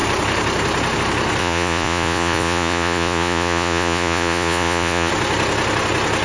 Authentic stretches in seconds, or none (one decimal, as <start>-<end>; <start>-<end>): 0.0-1.4; 5.1-6.2